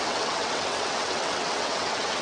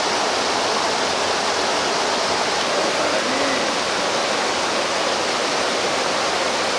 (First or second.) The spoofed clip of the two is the first